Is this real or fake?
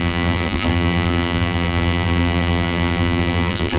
fake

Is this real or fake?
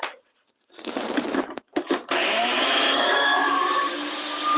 fake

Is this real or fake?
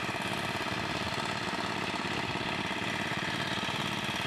real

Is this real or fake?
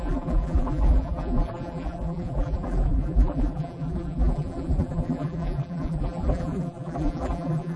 fake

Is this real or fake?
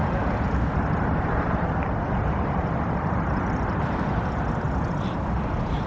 fake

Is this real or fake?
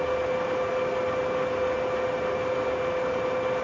real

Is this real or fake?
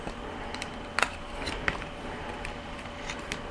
real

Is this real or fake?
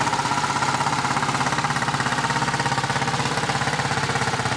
fake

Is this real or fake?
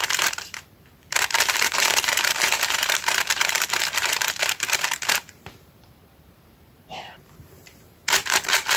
fake